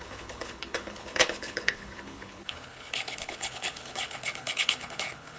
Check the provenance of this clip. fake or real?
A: fake